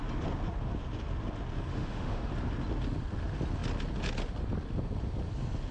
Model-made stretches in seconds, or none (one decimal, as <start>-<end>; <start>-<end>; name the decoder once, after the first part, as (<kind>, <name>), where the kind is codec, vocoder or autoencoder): 1.7-2.3 (autoencoder, DAC-VAE)